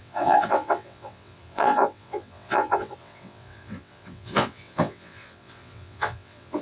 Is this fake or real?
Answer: fake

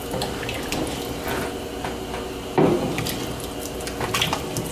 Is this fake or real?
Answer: real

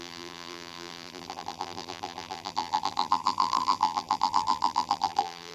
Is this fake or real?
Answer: fake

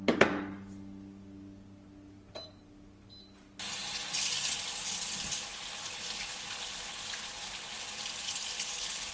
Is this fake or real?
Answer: real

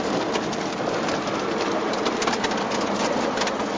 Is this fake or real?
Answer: real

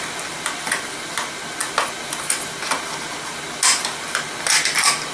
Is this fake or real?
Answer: real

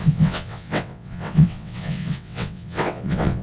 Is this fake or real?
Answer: fake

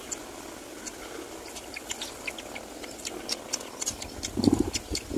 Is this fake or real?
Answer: real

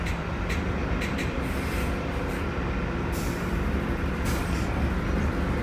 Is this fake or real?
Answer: fake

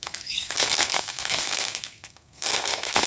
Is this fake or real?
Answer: fake